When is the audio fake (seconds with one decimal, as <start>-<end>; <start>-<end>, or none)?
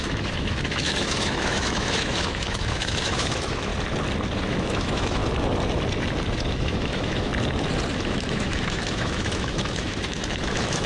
0.0-3.7; 4.5-5.2; 6.5-7.3; 8.0-10.9